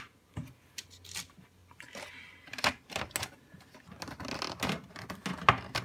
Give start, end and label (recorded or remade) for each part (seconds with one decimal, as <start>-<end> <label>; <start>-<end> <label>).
0.0-5.8 recorded